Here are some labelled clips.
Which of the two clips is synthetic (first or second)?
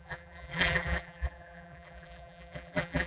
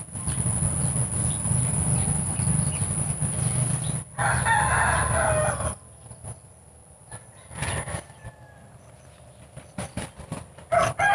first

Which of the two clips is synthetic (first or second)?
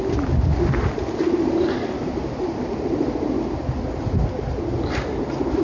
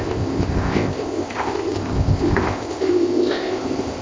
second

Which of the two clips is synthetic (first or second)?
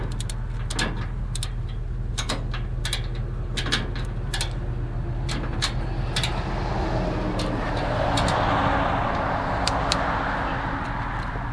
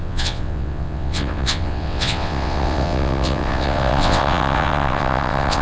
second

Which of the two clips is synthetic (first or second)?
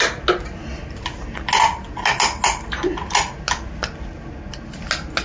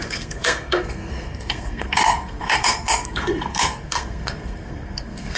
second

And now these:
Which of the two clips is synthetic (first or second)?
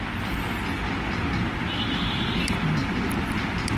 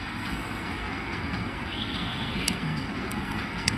second